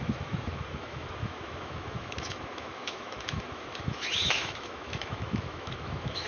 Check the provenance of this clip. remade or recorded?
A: remade